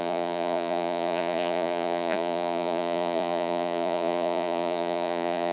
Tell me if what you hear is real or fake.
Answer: fake